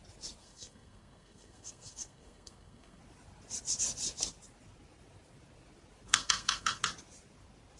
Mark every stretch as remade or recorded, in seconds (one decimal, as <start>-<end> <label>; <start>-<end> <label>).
0.0-0.4 recorded; 0.4-3.0 remade; 3.0-6.1 recorded; 6.1-6.8 remade; 6.8-7.8 recorded